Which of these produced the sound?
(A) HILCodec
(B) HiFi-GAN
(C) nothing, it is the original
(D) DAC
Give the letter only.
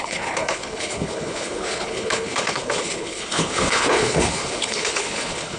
A